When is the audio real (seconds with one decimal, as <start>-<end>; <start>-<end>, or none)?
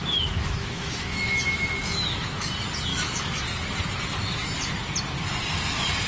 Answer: 2.5-2.9; 3.4-6.1